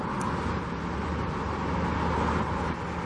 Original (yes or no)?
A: yes